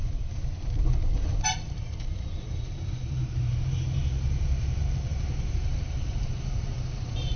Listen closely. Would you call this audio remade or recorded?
remade